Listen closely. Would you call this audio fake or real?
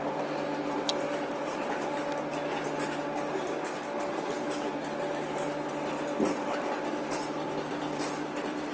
real